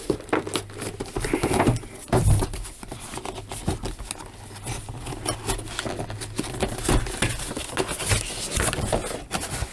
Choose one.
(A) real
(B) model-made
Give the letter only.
A